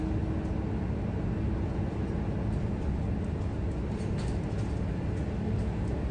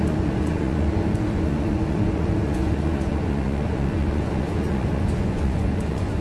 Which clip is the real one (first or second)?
first